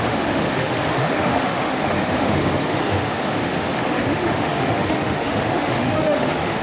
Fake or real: fake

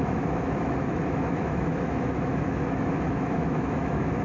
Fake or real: fake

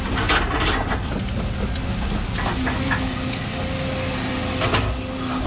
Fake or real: real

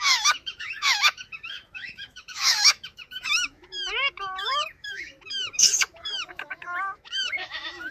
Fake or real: fake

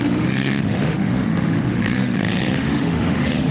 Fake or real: fake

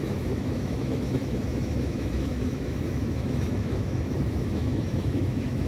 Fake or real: fake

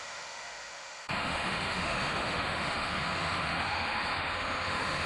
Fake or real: fake